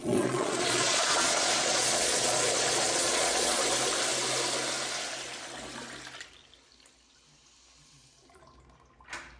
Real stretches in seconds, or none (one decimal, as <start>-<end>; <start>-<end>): 3.6-9.4